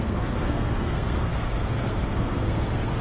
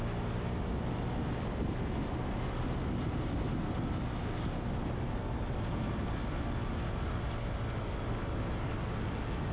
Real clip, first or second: second